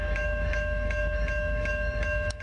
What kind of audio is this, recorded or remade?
remade